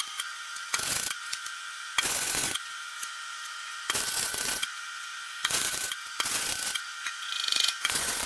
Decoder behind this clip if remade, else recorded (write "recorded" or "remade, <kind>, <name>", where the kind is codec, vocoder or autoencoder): remade, vocoder, Vocos